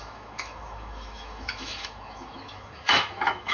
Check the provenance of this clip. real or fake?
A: fake